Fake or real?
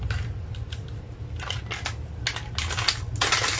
real